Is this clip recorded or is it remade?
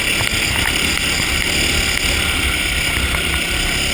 recorded